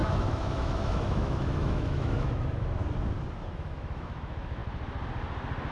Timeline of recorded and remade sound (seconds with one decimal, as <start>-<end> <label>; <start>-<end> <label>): 0.0-2.8 remade; 2.8-3.5 recorded; 3.5-4.6 remade; 4.6-5.7 recorded